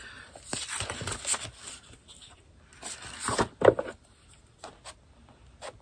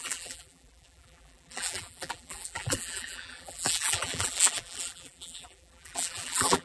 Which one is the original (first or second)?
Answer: first